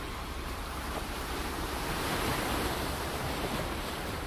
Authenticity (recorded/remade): remade